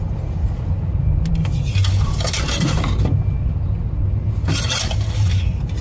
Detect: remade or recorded recorded